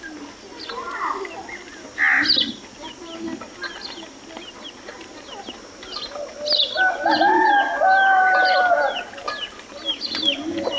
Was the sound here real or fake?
real